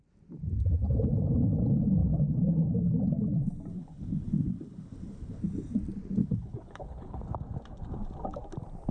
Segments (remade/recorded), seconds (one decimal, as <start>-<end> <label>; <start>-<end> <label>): 0.0-3.7 recorded; 3.7-5.4 remade; 5.4-6.2 recorded; 6.2-7.2 remade; 7.2-8.9 recorded

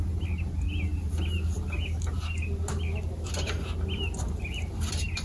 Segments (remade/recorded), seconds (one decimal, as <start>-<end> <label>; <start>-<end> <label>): 0.0-5.2 recorded

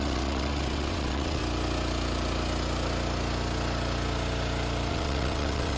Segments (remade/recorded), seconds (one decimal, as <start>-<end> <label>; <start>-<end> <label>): 0.0-1.4 remade; 1.4-4.9 recorded; 4.9-5.8 remade

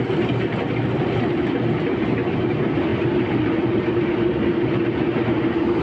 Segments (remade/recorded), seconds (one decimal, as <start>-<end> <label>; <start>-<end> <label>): 0.0-5.8 recorded

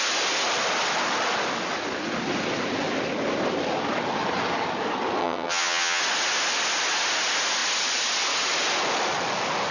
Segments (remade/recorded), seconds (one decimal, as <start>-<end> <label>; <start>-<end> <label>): 0.0-5.2 recorded; 5.2-6.0 remade; 6.0-9.7 recorded

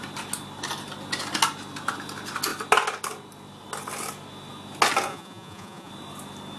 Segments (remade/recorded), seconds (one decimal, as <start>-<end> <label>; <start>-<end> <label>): 0.0-5.1 recorded; 5.1-5.9 remade; 5.9-6.6 recorded

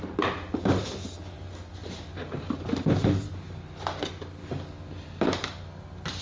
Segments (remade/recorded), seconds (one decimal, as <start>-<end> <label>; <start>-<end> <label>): 0.0-6.2 recorded